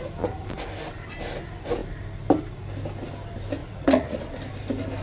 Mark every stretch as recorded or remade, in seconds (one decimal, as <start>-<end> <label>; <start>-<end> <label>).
0.0-3.6 recorded; 3.6-4.2 remade; 4.2-5.0 recorded